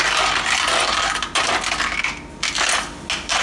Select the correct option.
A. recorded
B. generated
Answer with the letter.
A